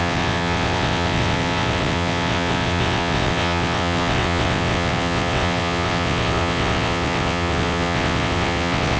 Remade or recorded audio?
remade